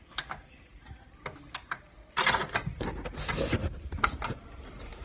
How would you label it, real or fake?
real